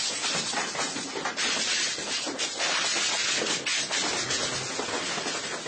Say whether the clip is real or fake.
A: real